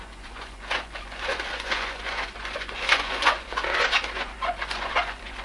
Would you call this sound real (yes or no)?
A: no